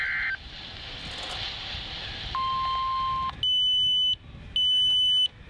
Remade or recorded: recorded